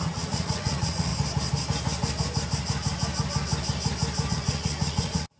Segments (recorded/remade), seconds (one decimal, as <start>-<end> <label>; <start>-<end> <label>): 0.0-1.1 remade; 1.1-4.3 recorded; 4.3-5.4 remade